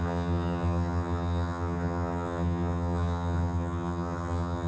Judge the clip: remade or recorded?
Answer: remade